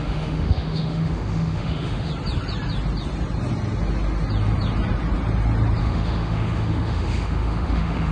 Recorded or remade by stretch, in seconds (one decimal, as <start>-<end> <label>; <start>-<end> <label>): 0.0-2.1 remade; 2.1-5.8 recorded; 5.8-8.1 remade